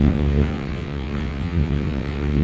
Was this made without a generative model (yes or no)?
no